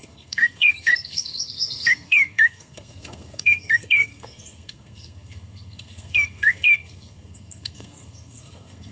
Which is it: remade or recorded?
remade